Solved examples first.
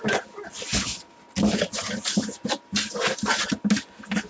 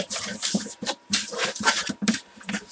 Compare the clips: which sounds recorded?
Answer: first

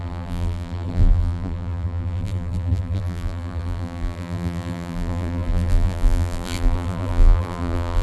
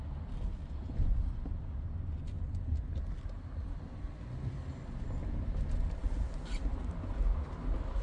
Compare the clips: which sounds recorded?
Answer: second